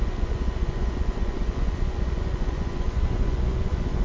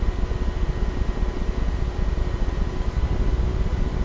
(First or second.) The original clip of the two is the second